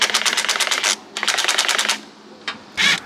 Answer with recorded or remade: recorded